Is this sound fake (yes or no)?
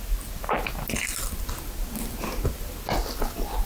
no